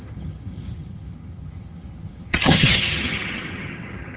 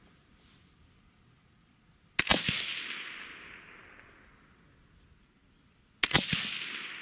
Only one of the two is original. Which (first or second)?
second